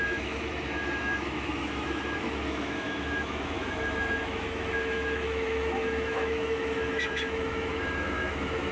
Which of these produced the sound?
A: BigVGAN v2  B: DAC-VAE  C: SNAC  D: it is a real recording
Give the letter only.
B